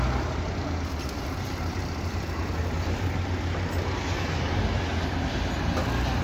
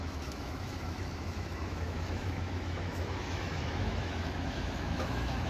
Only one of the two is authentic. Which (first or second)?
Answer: first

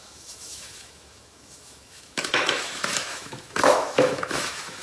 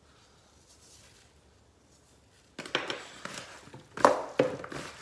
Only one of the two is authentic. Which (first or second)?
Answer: second